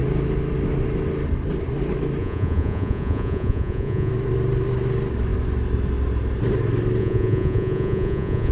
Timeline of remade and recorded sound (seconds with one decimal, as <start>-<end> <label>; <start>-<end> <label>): 0.0-2.2 recorded; 2.2-4.1 remade; 4.1-7.0 recorded; 7.0-8.5 remade